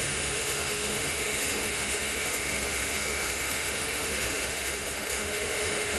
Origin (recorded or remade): remade